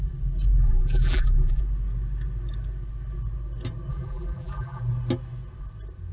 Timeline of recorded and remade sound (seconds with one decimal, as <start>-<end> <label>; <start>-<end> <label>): 0.0-0.6 recorded; 0.6-1.6 remade; 1.6-3.9 recorded; 3.9-4.8 remade; 4.8-6.1 recorded